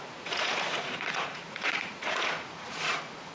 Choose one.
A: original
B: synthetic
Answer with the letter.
B